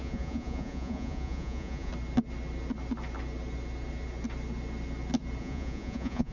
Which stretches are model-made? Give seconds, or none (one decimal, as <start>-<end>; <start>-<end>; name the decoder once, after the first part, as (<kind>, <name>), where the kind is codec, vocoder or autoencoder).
0.0-1.9 (vocoder, Vocos); 5.4-6.3